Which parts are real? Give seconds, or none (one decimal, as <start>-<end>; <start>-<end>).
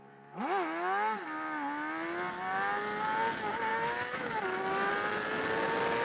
0.0-3.7; 4.9-6.0